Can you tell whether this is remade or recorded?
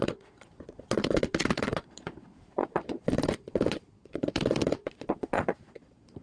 remade